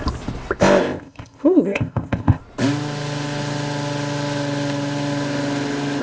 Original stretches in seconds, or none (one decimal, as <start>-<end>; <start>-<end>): 0.0-0.6; 2.4-6.0